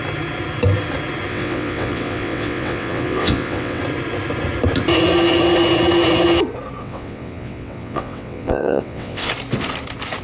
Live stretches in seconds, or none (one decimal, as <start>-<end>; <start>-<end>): 0.0-1.3; 3.8-6.8; 9.3-10.2